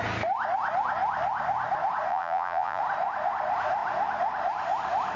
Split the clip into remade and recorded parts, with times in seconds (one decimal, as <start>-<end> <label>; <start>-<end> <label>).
0.0-2.1 recorded; 2.1-2.8 remade; 2.8-5.2 recorded